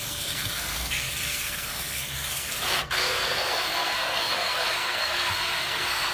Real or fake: fake